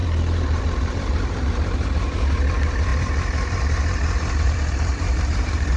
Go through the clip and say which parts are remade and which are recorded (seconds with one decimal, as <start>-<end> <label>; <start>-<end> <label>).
0.0-5.8 remade